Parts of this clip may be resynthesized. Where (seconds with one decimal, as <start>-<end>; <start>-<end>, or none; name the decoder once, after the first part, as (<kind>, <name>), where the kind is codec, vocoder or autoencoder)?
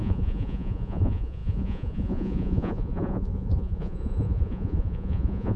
0.0-5.6 (vocoder, Vocos)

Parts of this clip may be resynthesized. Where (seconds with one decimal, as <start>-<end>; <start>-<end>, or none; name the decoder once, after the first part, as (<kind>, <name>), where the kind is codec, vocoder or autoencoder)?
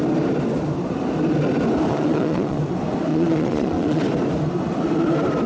1.9-2.6 (vocoder, Vocos); 3.1-4.0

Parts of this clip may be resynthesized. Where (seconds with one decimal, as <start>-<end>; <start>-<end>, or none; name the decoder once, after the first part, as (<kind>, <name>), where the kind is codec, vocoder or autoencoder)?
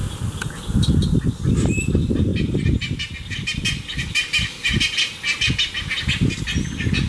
none